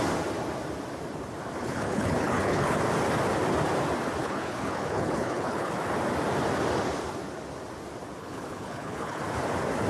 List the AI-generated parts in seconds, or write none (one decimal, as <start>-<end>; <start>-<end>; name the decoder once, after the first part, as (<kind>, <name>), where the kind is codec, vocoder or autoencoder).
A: 1.6-2.8 (codec, HILCodec); 4.2-5.7; 8.2-9.2